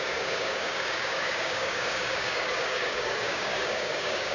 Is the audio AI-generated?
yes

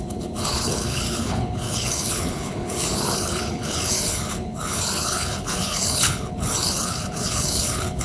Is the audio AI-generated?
yes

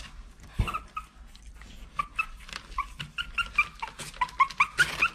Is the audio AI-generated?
no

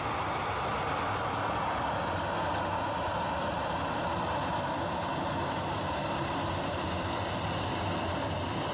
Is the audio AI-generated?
yes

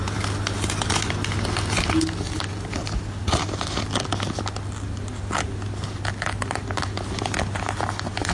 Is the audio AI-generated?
no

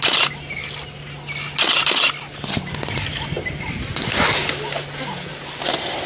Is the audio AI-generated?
no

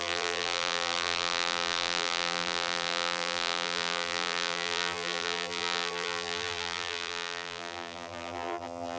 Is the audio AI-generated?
yes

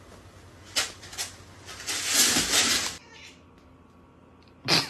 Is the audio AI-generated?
no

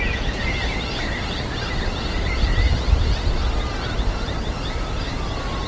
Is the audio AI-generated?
no